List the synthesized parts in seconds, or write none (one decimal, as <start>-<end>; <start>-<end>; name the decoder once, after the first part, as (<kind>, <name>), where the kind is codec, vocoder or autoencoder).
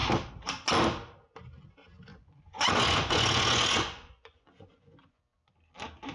2.1-5.2 (vocoder, Vocos)